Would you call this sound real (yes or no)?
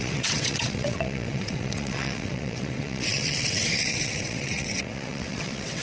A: no